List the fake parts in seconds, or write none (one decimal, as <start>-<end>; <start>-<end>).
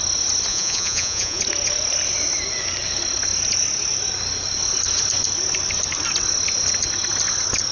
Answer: 0.5-1.4